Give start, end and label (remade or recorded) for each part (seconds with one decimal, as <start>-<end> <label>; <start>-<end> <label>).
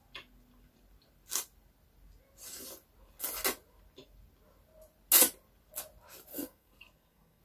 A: 0.0-6.3 recorded; 6.3-7.4 remade